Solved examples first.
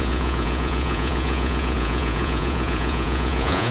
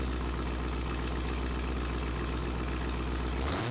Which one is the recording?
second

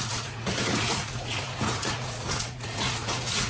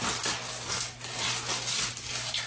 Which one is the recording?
second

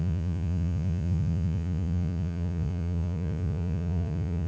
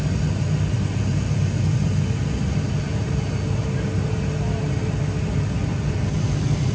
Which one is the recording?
second